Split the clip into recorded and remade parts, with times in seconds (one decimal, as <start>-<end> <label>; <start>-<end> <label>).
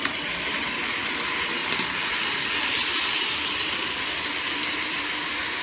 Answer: 0.0-5.6 recorded